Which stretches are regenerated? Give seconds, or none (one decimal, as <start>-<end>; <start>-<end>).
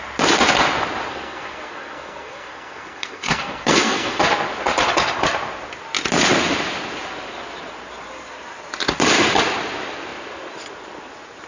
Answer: 1.1-4.2